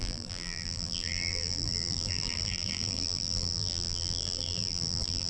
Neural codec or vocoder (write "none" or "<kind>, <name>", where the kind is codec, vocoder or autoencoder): vocoder, BigVGAN v2